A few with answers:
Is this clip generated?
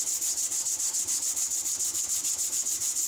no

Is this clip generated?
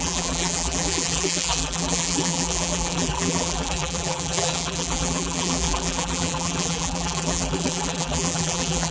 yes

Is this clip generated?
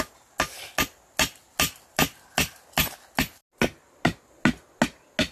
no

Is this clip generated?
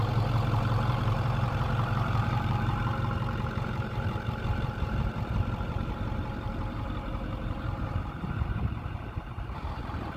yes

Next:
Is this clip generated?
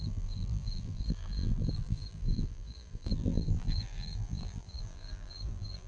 yes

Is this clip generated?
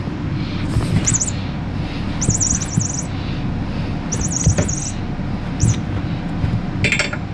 no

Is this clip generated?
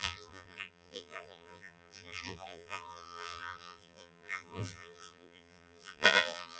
yes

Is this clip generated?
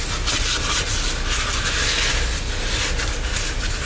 no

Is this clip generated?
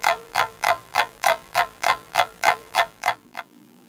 yes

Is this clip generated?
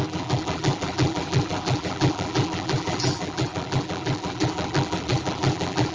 yes